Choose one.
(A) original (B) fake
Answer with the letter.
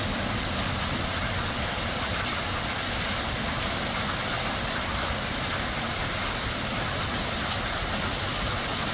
A